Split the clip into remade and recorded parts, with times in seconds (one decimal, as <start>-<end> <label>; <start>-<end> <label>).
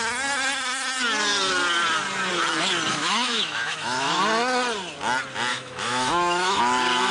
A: 0.0-2.9 recorded; 2.9-4.2 remade; 4.2-5.5 recorded; 5.5-6.6 remade; 6.6-7.1 recorded